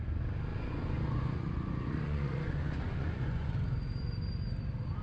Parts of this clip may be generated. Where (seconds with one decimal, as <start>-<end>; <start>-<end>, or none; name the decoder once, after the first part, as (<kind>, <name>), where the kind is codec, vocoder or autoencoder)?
0.5-3.5 (vocoder, Vocos)